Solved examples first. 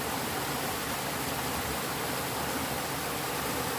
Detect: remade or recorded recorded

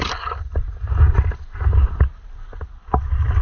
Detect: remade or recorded recorded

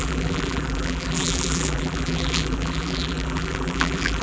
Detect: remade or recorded remade